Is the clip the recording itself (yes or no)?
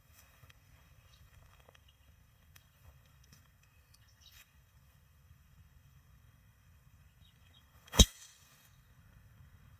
no